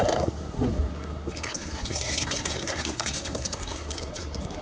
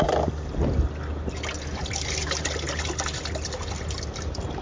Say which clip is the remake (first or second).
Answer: first